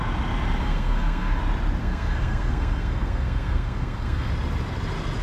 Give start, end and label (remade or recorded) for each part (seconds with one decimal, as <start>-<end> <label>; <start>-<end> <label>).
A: 0.0-0.6 recorded; 0.6-1.4 remade; 1.4-1.8 recorded; 1.8-4.3 remade; 4.3-5.2 recorded